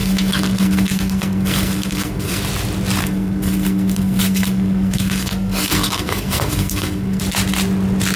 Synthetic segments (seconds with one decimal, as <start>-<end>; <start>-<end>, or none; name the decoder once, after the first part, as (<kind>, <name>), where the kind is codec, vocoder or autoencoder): 0.0-2.4 (codec, SNAC); 3.0-7.2